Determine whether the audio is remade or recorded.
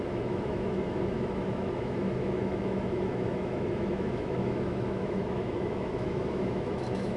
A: remade